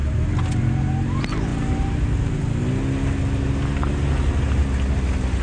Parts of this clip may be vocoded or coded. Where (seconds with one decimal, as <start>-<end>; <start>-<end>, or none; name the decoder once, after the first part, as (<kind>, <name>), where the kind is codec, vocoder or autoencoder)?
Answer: none

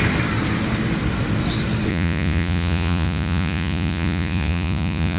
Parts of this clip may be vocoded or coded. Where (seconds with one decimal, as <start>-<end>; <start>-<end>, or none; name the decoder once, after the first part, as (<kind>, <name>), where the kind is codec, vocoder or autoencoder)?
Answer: 1.9-5.2 (vocoder, Vocos)

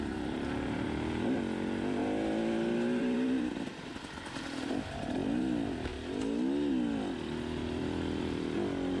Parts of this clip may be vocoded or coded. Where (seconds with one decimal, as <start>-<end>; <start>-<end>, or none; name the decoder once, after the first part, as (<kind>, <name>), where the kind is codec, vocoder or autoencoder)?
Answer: 0.0-2.0 (vocoder, BigVGAN v2); 3.0-5.9; 6.7-9.0

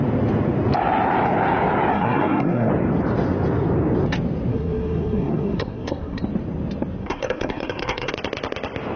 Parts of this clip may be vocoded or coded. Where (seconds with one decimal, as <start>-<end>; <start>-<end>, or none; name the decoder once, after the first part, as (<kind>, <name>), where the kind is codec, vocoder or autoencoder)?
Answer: 1.9-2.7 (codec, SNAC); 4.5-6.2; 7.0-8.1

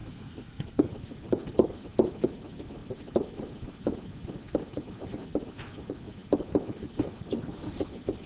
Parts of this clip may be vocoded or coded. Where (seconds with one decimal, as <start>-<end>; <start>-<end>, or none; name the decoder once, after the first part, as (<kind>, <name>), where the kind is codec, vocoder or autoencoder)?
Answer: 0.0-0.9 (codec, SNAC)